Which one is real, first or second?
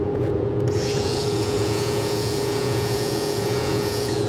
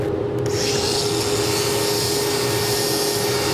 second